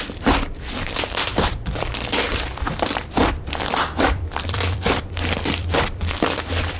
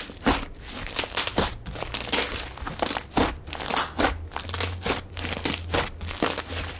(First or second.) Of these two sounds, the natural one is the second